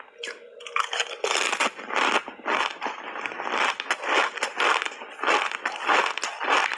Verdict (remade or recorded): recorded